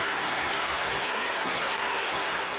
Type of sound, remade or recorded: remade